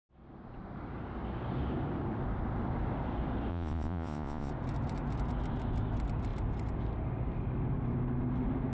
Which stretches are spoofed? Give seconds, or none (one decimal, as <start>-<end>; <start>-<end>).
3.5-4.5